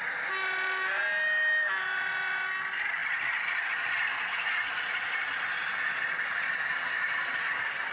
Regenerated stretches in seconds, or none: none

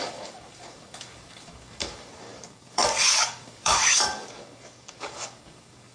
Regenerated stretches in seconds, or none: 0.0-5.9 (codec, DAC)

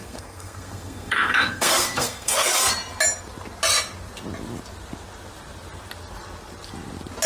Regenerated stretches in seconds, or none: 0.0-2.7 (codec, SNAC)

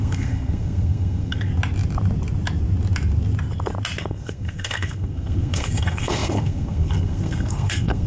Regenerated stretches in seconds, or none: 0.0-1.5 (codec, SNAC); 4.0-8.1

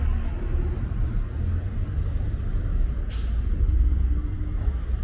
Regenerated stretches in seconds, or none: none

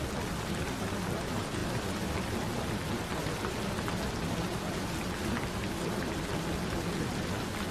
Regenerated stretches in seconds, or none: none